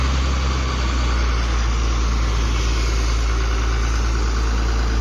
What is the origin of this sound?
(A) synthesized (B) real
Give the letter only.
B